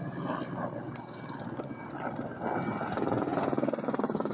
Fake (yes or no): no